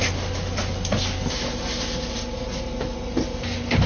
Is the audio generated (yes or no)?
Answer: no